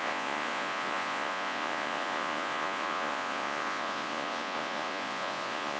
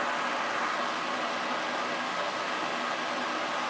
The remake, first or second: first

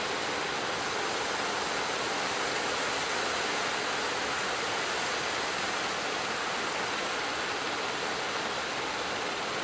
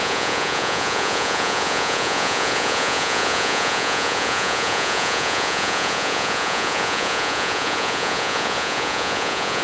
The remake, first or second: second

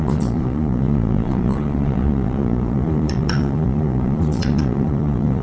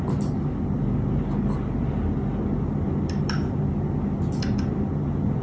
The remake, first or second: first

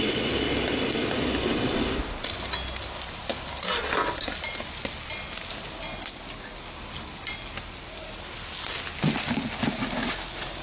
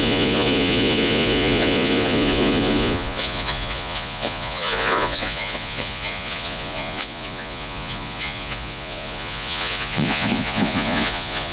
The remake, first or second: second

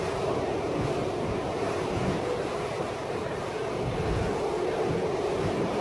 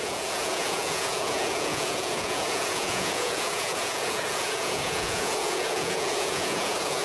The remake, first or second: second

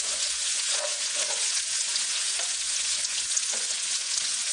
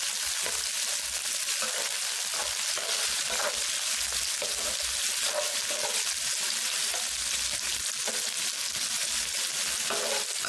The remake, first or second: first